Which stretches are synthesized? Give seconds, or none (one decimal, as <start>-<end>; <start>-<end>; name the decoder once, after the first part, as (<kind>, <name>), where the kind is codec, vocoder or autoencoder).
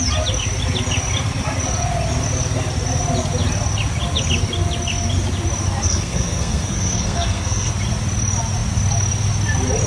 5.8-7.7 (codec, SNAC)